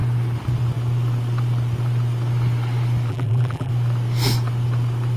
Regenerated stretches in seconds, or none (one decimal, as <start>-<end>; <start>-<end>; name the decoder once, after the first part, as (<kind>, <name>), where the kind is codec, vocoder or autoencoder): 3.1-3.7 (vocoder, BigVGAN v2)